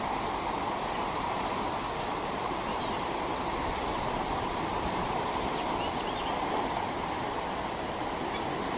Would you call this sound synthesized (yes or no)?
no